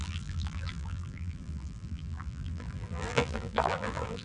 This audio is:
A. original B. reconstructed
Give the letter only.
B